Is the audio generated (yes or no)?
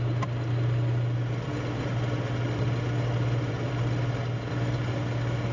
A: no